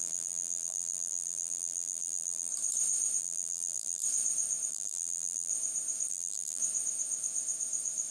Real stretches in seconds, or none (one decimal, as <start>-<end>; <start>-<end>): 2.5-3.2; 4.0-4.7; 5.5-6.1; 6.6-8.1